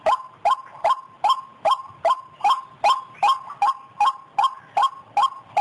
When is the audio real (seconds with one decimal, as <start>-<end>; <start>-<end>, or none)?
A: 0.0-5.6